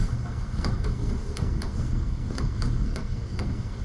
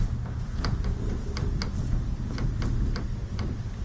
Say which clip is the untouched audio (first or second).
second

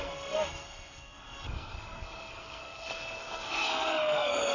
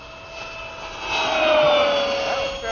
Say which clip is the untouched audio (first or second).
second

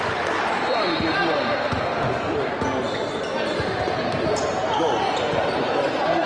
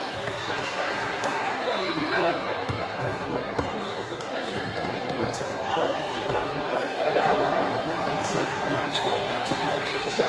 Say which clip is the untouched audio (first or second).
first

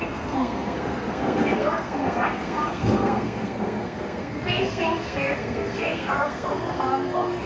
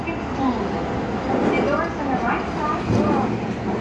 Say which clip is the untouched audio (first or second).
second